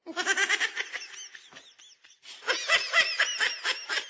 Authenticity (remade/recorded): recorded